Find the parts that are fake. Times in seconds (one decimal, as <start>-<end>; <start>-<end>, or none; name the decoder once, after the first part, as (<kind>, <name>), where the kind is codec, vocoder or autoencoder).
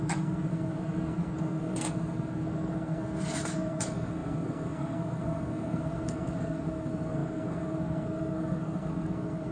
0.0-9.5 (codec, SNAC)